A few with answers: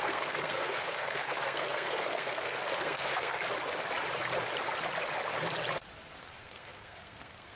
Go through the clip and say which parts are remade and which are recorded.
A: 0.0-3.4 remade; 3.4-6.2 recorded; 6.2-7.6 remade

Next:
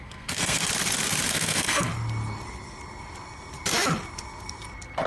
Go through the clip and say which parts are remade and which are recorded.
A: 0.0-0.6 remade; 0.6-1.3 recorded; 1.3-1.9 remade; 1.9-5.1 recorded

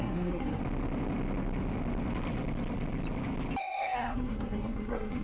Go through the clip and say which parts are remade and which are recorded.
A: 0.0-0.6 remade; 0.6-3.6 recorded; 3.6-5.2 remade

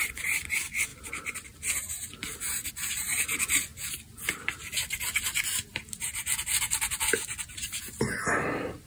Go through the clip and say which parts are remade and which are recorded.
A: 0.0-8.9 recorded

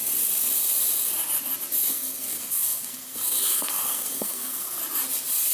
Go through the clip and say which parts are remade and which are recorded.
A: 0.0-1.9 recorded; 1.9-4.8 remade; 4.8-5.5 recorded

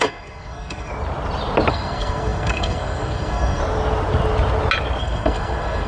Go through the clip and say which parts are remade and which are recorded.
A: 0.0-0.9 remade; 0.9-1.7 recorded; 1.7-3.6 remade; 3.6-5.0 recorded; 5.0-5.9 remade

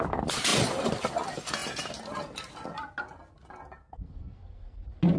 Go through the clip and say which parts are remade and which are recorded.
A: 0.0-3.8 recorded; 3.8-4.8 remade; 4.8-5.2 recorded

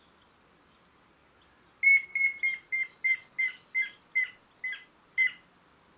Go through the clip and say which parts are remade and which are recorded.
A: 0.0-6.0 recorded